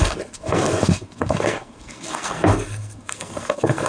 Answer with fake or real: fake